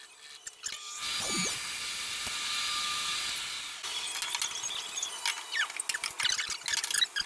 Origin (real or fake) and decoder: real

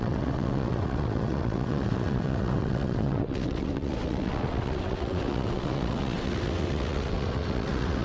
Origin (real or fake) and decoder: fake, vocoder, WaveNeXt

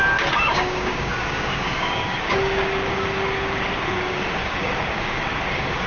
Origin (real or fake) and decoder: fake, codec, DAC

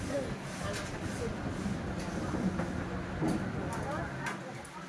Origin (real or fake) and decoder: real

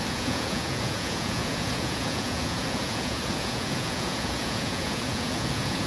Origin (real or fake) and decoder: fake, vocoder, Vocos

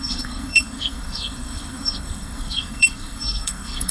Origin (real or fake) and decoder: fake, codec, SNAC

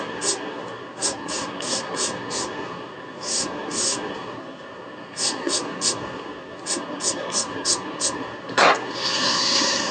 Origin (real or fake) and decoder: fake, codec, SNAC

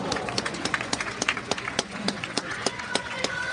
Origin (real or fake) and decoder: fake, vocoder, Vocos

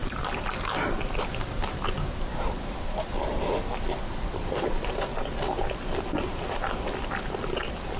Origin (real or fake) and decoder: real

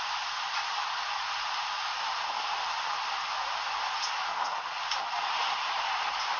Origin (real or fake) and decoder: real